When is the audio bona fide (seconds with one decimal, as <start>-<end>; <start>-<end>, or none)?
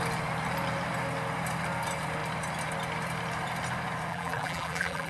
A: 0.0-4.1